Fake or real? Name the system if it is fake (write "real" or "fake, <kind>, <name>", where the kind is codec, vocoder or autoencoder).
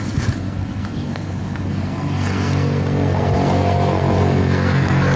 fake, codec, SNAC